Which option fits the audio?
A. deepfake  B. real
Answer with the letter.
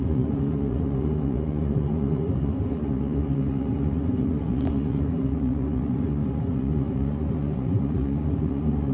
A